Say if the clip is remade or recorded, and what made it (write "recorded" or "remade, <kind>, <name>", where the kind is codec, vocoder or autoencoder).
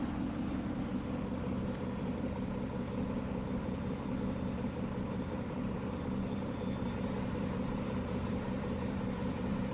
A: remade, vocoder, BigVGAN v2